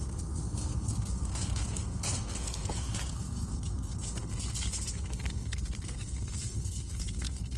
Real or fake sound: fake